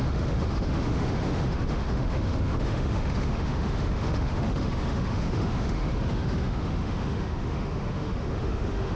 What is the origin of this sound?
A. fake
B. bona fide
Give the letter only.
A